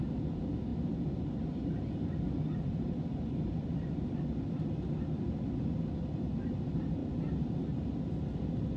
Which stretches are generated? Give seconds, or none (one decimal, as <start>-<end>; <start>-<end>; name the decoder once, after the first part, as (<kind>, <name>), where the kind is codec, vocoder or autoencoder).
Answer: none